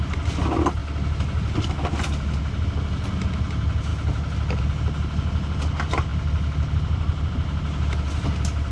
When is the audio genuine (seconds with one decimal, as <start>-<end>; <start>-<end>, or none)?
0.0-8.7